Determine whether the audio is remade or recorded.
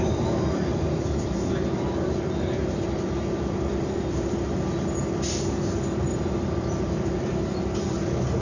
remade